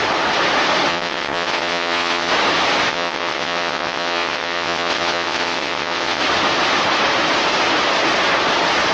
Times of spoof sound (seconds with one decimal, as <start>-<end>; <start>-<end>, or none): 0.9-2.3; 2.9-6.2